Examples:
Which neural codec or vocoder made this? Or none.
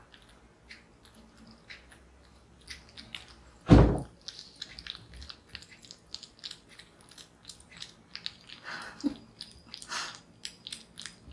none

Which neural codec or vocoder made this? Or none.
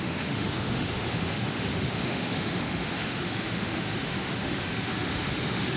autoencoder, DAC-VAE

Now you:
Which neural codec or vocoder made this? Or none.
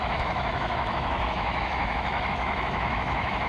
autoencoder, DAC-VAE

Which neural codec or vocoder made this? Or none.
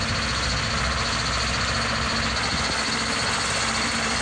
none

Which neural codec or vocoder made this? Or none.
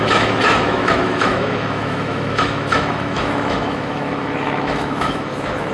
autoencoder, DAC-VAE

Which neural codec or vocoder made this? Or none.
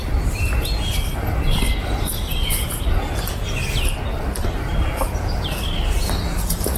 none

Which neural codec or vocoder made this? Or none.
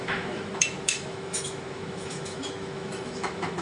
autoencoder, DAC-VAE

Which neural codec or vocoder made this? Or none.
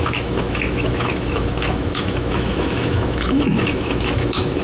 autoencoder, DAC-VAE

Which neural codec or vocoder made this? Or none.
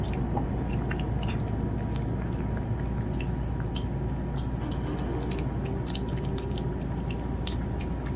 none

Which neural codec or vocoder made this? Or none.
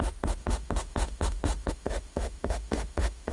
autoencoder, DAC-VAE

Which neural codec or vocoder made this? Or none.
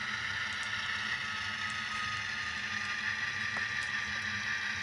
none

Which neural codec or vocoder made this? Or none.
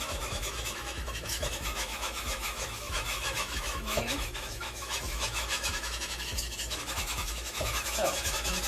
autoencoder, DAC-VAE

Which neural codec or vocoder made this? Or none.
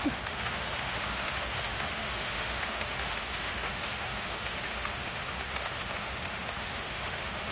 autoencoder, DAC-VAE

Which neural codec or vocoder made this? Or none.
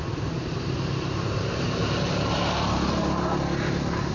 none